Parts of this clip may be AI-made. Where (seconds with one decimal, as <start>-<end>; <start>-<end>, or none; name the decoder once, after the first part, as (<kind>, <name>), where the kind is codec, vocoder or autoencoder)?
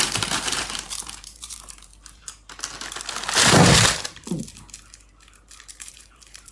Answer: 0.0-1.9 (vocoder, BigVGAN v2); 5.6-6.5